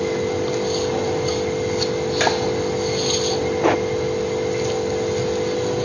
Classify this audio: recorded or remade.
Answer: recorded